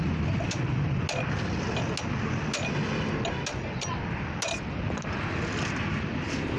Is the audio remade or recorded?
recorded